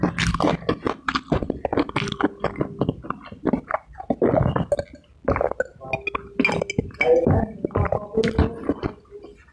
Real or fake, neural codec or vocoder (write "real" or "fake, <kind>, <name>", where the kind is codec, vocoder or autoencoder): real